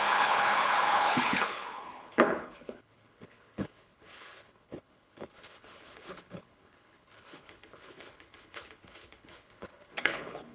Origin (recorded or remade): remade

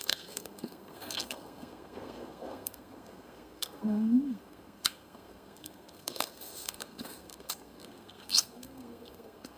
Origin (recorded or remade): remade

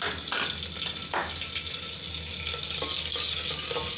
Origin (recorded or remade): recorded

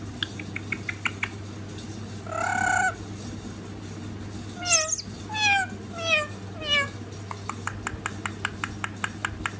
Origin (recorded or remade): recorded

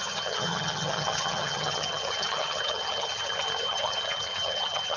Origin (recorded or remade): remade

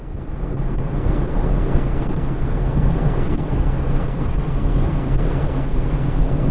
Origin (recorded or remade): remade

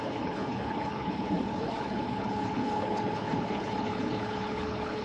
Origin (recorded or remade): remade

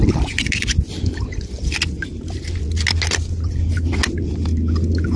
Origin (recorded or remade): recorded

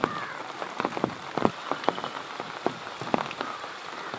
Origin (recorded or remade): recorded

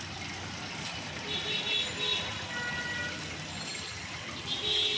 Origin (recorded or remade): recorded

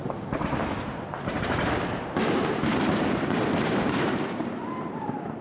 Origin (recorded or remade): remade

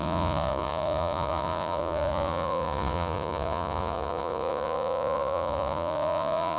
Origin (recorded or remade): remade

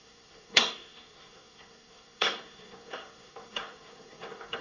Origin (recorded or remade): remade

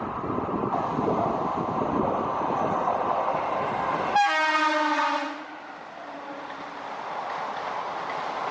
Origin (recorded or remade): recorded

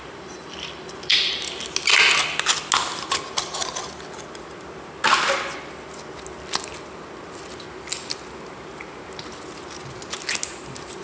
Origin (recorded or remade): recorded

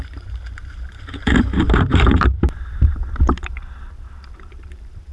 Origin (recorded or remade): remade